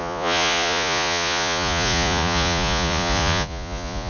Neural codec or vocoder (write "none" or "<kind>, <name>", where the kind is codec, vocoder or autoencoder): vocoder, Vocos